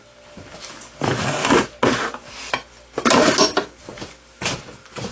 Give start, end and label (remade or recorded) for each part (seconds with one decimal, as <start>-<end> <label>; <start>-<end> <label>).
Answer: 0.0-5.1 recorded